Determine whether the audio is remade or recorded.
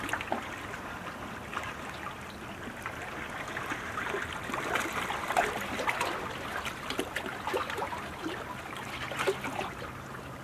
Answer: recorded